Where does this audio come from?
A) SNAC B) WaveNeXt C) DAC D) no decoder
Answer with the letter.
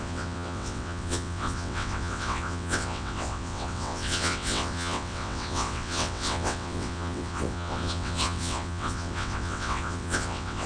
B